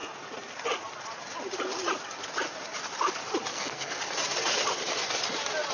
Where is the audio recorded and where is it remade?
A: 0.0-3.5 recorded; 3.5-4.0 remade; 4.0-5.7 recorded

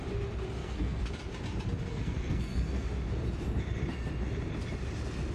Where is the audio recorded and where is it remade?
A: 0.0-0.6 recorded; 0.6-1.1 remade; 1.1-1.9 recorded; 1.9-2.9 remade; 2.9-5.3 recorded